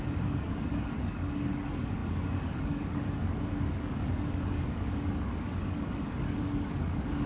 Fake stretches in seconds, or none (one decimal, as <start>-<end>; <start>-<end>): 0.0-7.3